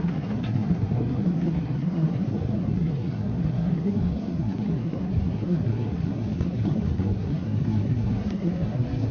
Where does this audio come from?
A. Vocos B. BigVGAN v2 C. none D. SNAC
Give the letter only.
D